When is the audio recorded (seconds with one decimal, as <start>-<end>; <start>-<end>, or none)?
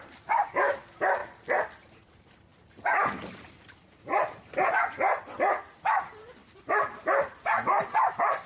1.2-1.9; 4.1-5.2